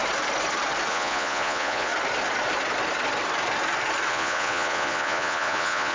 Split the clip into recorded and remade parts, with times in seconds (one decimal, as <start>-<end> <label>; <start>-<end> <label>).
0.0-0.9 recorded; 0.9-1.9 remade; 1.9-4.1 recorded; 4.1-5.9 remade